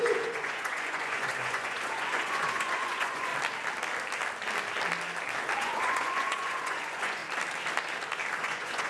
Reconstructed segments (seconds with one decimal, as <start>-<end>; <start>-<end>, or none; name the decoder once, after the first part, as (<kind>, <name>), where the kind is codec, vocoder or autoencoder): 0.0-3.3 (vocoder, Vocos); 5.6-7.2; 8.4-8.9